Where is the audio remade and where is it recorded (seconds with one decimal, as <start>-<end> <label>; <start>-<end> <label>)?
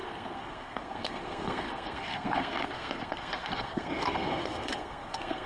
0.0-5.5 remade